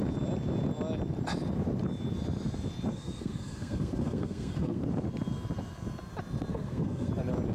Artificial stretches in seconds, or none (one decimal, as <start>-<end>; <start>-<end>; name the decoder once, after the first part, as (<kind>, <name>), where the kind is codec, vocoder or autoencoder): 2.9-4.8 (codec, SNAC); 6.5-7.1